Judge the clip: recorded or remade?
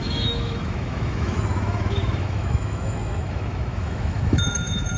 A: remade